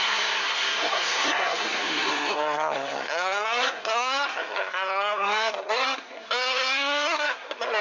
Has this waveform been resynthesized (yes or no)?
yes